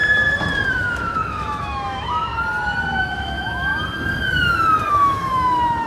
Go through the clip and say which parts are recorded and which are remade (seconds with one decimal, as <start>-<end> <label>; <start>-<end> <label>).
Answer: 0.0-0.7 recorded; 0.7-2.3 remade; 2.3-3.0 recorded; 3.0-3.7 remade; 3.7-4.9 recorded; 4.9-5.9 remade